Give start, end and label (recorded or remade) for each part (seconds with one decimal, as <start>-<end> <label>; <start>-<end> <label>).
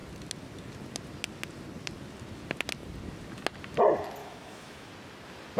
0.0-4.2 recorded; 4.2-4.9 remade; 4.9-5.6 recorded